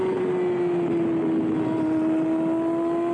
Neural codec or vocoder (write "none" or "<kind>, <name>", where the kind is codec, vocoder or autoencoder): none